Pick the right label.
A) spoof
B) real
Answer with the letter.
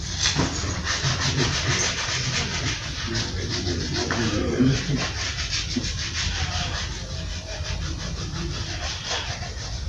B